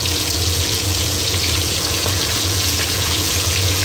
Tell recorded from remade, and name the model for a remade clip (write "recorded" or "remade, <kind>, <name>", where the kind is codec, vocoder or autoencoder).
remade, vocoder, Vocos